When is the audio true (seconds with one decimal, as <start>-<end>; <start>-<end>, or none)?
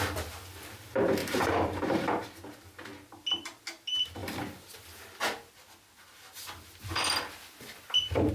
0.0-1.2; 1.8-8.3